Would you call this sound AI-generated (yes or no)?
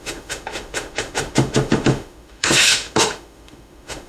yes